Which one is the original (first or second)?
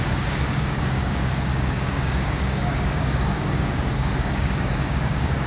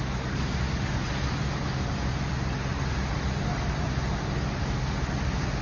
second